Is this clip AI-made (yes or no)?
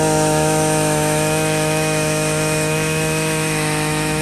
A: yes